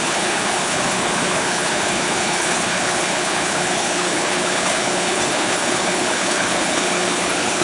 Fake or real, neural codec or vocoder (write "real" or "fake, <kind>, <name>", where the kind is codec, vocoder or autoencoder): fake, codec, HILCodec